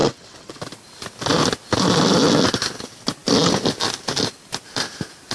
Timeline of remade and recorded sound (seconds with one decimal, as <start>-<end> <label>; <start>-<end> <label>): 0.0-0.6 remade; 0.6-5.3 recorded